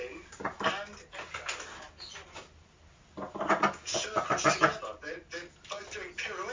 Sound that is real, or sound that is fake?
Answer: real